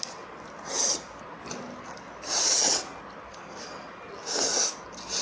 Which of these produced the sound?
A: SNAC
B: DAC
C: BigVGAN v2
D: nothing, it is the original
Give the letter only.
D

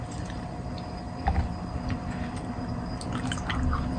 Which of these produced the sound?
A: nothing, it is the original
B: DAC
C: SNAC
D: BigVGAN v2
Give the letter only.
A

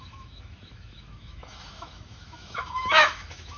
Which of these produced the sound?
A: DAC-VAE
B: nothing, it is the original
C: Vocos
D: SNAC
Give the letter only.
A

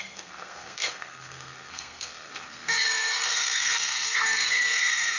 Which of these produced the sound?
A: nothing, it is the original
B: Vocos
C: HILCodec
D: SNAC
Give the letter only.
D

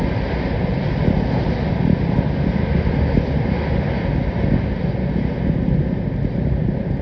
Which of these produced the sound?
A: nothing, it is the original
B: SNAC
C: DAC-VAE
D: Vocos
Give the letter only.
A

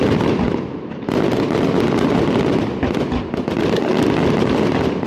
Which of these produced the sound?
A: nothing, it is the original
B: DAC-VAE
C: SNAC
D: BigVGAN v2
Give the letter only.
A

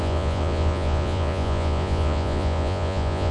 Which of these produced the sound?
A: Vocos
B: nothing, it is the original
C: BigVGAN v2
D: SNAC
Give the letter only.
A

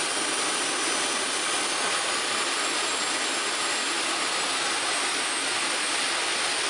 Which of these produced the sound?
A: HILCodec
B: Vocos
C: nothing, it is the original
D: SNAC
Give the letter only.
C